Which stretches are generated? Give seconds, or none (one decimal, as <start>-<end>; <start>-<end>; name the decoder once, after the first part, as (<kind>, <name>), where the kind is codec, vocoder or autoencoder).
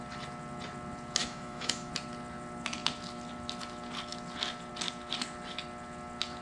1.2-1.9 (autoencoder, DAC-VAE)